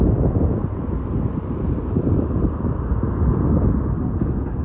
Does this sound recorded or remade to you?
recorded